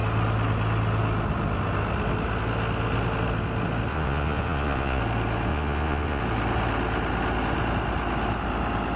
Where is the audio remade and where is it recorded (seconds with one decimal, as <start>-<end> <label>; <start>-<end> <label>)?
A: 0.0-3.9 recorded; 3.9-5.0 remade; 5.0-5.5 recorded; 5.5-6.2 remade; 6.2-9.0 recorded